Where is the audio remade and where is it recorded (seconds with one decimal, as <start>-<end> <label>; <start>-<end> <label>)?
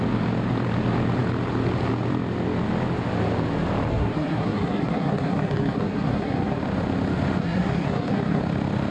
0.0-3.9 recorded; 3.9-6.6 remade; 6.6-7.4 recorded; 7.4-8.4 remade; 8.4-8.9 recorded